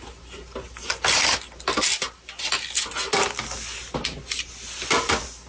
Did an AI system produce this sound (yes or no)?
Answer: no